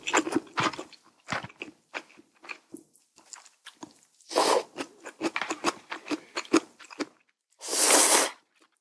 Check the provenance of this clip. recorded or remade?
recorded